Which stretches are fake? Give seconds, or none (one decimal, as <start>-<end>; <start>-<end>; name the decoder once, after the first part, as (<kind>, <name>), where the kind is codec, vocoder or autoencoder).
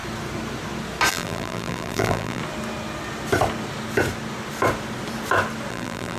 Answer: 1.1-2.4 (vocoder, BigVGAN v2); 5.7-6.2